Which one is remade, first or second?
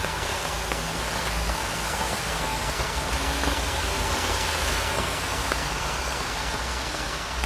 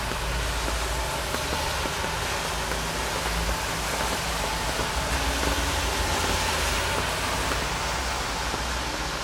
first